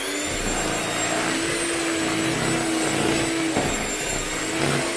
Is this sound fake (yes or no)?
no